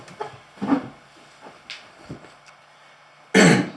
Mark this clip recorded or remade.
recorded